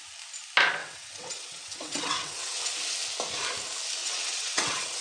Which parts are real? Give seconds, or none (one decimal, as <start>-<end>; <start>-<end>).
0.0-0.8; 2.6-4.0

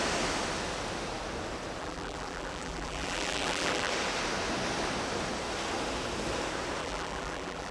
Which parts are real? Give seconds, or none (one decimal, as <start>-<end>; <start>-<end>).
0.0-1.8; 3.9-6.8